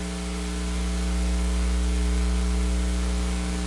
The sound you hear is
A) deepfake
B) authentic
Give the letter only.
B